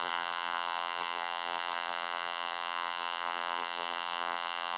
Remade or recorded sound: remade